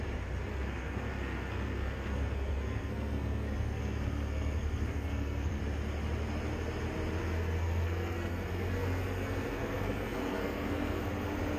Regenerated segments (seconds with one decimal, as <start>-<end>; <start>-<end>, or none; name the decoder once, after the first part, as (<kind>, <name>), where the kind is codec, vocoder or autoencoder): 0.5-5.6 (codec, SNAC); 7.2-11.0